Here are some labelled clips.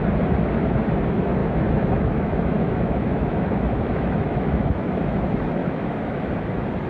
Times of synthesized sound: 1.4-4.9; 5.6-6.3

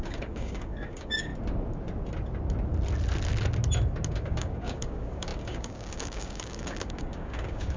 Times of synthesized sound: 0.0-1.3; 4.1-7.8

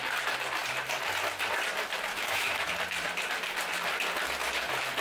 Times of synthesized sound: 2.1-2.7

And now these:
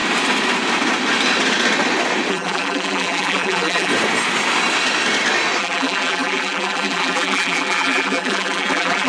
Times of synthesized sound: 2.3-3.9; 5.6-9.1

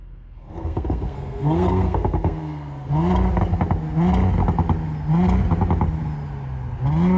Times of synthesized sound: 0.0-2.9

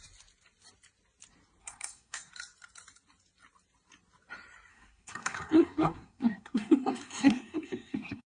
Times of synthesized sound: 1.6-2.3; 4.7-8.4

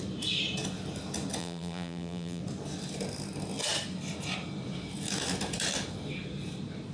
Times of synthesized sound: 1.4-2.4